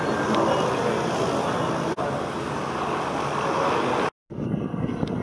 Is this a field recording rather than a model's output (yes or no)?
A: yes